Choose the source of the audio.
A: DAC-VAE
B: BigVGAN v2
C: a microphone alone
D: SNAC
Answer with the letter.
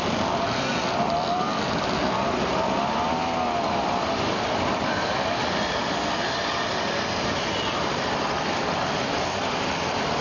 C